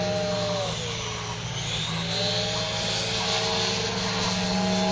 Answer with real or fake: real